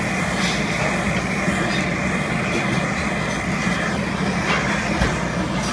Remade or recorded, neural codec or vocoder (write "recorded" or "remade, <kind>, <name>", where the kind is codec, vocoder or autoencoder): recorded